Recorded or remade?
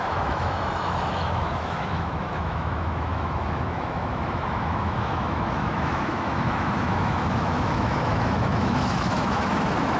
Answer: remade